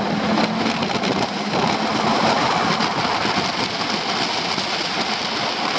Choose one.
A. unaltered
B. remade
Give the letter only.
A